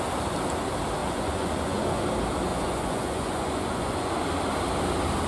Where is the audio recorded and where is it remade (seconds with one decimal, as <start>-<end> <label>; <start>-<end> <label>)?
0.0-1.0 recorded; 1.0-2.1 remade; 2.1-2.5 recorded; 2.5-4.1 remade; 4.1-5.3 recorded